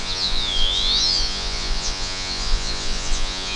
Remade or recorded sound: remade